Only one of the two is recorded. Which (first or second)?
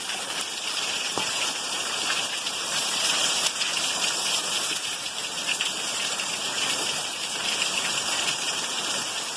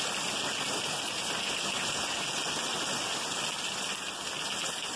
second